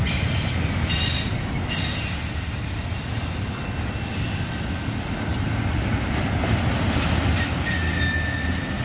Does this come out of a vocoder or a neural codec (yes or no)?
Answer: no